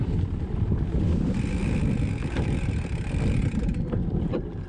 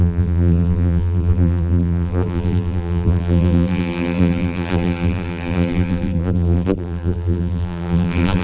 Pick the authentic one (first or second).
first